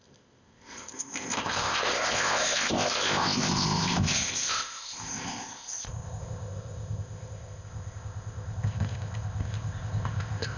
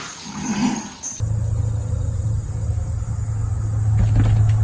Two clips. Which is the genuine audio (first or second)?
second